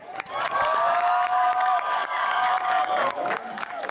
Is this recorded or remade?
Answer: remade